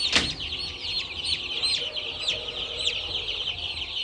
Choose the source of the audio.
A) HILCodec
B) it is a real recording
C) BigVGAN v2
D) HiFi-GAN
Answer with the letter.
B